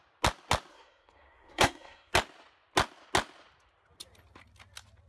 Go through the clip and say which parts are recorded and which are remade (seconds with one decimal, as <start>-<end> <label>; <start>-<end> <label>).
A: 0.0-0.7 recorded; 0.7-2.1 remade; 2.1-5.1 recorded